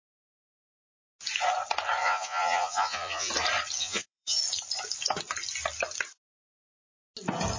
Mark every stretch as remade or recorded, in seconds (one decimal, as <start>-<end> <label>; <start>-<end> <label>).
0.0-2.0 recorded; 2.0-3.3 remade; 3.3-3.8 recorded; 3.8-4.4 remade; 4.4-7.6 recorded